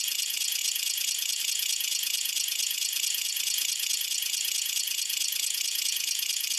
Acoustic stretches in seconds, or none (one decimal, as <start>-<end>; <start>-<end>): none